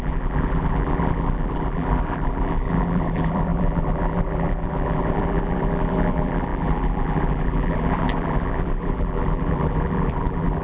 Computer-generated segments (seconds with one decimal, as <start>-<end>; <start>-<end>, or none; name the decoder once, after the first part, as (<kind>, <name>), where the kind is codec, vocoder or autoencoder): 0.0-10.6 (vocoder, BigVGAN v2)